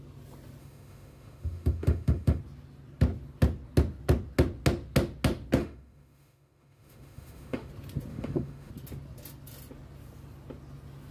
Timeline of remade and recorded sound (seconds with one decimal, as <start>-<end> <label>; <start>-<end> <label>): 0.0-0.6 recorded; 0.6-2.4 remade; 2.4-5.6 recorded; 5.6-7.7 remade; 7.7-8.1 recorded; 8.1-8.7 remade; 8.7-11.1 recorded